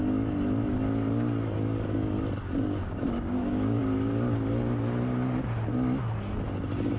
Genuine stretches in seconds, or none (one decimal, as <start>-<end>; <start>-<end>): 0.0-2.8; 3.8-7.0